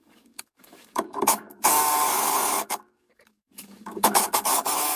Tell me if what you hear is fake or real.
fake